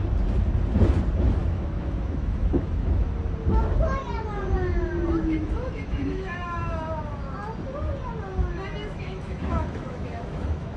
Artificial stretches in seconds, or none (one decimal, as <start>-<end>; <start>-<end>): 1.4-3.0; 5.2-6.6; 8.8-10.8